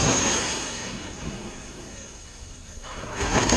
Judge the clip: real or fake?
fake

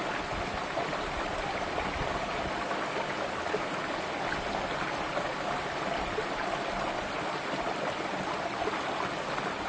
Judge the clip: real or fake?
real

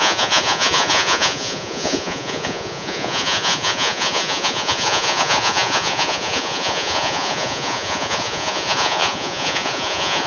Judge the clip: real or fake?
fake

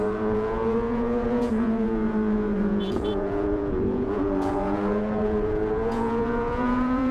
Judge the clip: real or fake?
fake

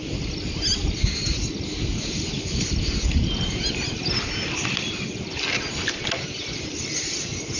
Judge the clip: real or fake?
real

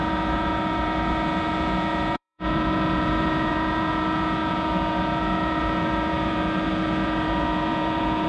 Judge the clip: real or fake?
fake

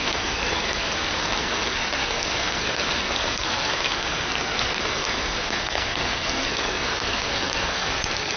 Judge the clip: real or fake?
fake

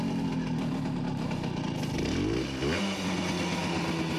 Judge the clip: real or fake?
real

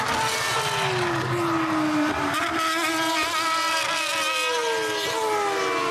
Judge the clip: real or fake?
real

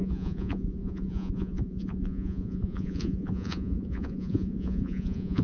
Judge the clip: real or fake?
fake